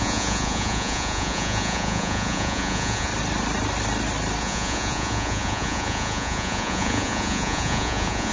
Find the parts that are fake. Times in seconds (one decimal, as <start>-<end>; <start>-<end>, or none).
0.0-3.1; 4.4-8.3